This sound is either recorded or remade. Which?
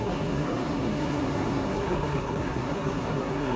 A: remade